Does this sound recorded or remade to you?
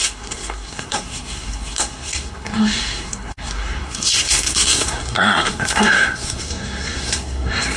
remade